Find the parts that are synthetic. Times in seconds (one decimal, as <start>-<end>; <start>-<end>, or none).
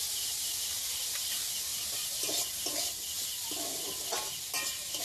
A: 0.7-1.7